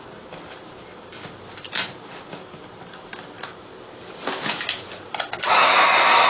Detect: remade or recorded recorded